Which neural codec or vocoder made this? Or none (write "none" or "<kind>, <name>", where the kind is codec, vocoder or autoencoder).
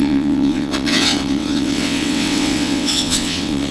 vocoder, WaveNeXt